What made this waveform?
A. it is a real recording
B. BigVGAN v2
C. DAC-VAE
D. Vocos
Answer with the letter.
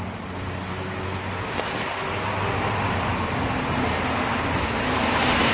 A